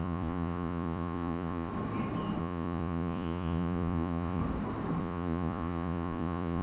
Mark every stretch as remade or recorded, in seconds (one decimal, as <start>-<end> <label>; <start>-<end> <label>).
0.0-1.7 remade; 1.7-2.4 recorded; 2.4-4.4 remade; 4.4-5.0 recorded; 5.0-6.6 remade